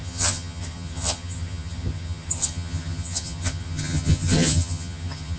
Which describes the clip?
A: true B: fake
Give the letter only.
B